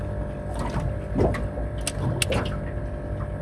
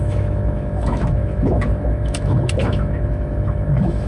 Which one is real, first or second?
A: first